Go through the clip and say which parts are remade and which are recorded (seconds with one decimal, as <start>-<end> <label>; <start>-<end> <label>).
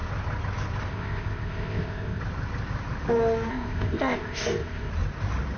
0.0-0.9 recorded; 0.9-2.2 remade; 2.2-3.5 recorded; 3.5-4.9 remade; 4.9-5.6 recorded